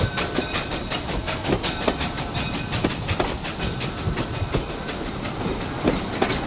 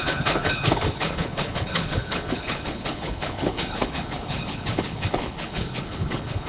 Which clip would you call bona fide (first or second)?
first